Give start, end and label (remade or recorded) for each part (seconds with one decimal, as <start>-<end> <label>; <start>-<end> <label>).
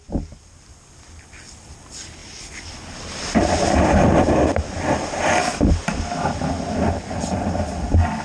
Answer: 0.0-8.2 recorded